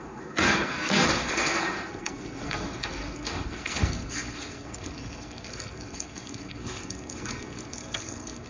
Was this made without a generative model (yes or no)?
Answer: no